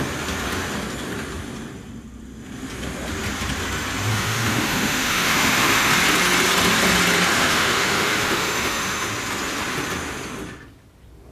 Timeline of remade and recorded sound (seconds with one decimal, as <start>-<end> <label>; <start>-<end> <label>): 0.0-4.1 recorded; 4.1-5.9 remade; 5.9-7.3 recorded; 7.3-9.1 remade; 9.1-11.3 recorded

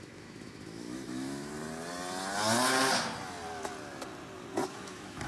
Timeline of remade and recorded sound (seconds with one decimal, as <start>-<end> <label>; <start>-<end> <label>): 0.0-1.5 remade; 1.5-4.7 recorded; 4.7-5.3 remade

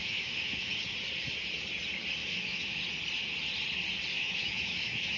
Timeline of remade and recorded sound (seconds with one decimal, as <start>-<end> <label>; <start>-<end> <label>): 0.0-0.7 remade; 0.7-2.2 recorded; 2.2-2.8 remade; 2.8-4.1 recorded; 4.1-5.2 remade